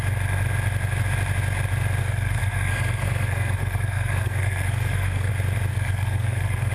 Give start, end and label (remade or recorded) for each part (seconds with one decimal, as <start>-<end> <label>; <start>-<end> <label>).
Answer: 0.0-2.0 recorded; 2.0-5.3 remade; 5.3-5.7 recorded; 5.7-6.7 remade